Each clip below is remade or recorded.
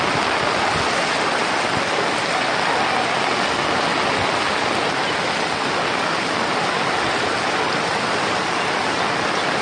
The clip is recorded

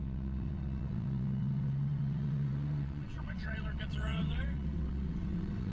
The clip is remade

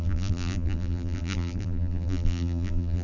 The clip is remade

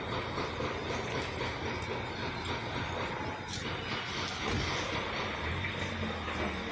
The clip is recorded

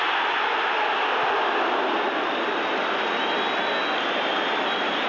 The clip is recorded